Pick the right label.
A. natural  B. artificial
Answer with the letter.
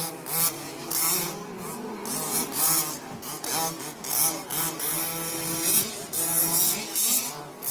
A